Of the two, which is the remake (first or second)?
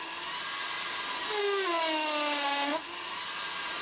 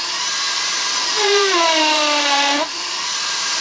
second